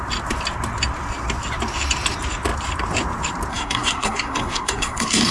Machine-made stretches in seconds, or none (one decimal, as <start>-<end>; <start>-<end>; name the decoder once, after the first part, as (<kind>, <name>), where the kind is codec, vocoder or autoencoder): 3.5-5.3 (codec, SNAC)